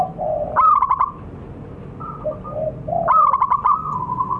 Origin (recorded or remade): recorded